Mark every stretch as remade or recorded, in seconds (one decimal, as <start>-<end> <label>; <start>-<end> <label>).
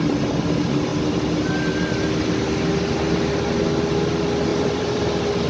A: 0.0-4.5 recorded; 4.5-5.0 remade; 5.0-5.5 recorded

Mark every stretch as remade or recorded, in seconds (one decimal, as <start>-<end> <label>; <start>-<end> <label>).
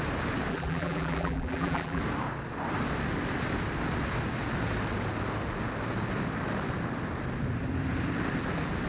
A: 0.0-0.5 recorded; 0.5-2.0 remade; 2.0-8.9 recorded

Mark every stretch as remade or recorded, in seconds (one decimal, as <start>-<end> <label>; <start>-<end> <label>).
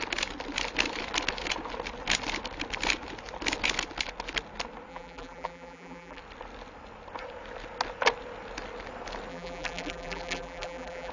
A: 0.0-4.9 recorded; 4.9-6.2 remade; 6.2-9.3 recorded; 9.3-11.1 remade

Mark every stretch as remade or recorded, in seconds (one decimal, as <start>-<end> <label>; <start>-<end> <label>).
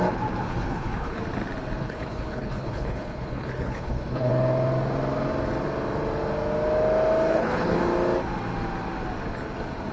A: 0.0-0.4 recorded; 0.4-1.2 remade; 1.2-1.8 recorded; 1.8-4.3 remade; 4.3-7.3 recorded; 7.3-7.8 remade; 7.8-9.9 recorded